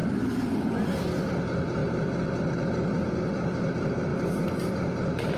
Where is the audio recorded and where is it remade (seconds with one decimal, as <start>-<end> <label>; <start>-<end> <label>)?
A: 0.0-0.5 remade; 0.5-5.4 recorded